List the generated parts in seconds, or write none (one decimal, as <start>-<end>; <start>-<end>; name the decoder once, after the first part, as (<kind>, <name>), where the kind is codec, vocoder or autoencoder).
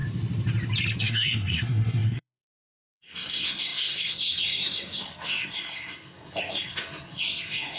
1.0-7.8 (codec, SNAC)